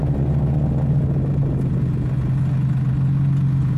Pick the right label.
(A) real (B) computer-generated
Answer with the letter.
A